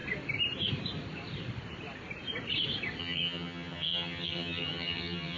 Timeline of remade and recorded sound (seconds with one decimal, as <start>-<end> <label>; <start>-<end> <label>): 0.0-3.0 recorded; 3.0-5.4 remade